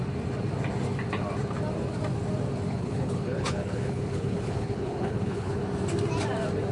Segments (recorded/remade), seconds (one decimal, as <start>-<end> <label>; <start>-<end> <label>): 0.0-2.7 recorded; 2.7-5.6 remade; 5.6-6.7 recorded